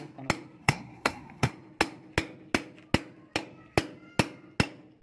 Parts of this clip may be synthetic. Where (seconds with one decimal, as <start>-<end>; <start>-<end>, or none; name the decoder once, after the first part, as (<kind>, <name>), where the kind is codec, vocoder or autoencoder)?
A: 0.6-1.5 (codec, SNAC)